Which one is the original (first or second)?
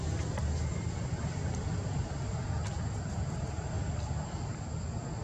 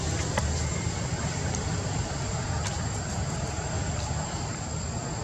first